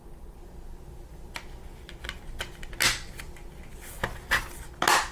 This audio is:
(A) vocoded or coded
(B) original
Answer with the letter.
B